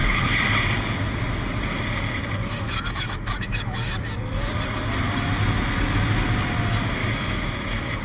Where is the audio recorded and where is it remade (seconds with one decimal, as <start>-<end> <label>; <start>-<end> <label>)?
0.0-2.4 recorded; 2.4-4.1 remade; 4.1-7.0 recorded; 7.0-8.0 remade